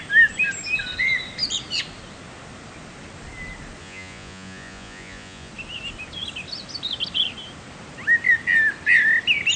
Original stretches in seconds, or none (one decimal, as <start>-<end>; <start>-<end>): 0.0-3.8; 5.5-9.6